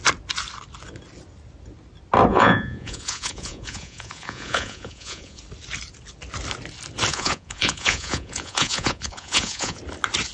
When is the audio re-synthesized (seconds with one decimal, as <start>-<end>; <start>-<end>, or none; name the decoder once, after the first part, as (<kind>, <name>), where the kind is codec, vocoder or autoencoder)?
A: 2.3-5.4 (vocoder, Vocos); 7.1-9.8